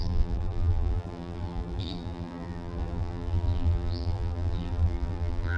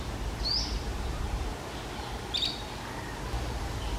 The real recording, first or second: second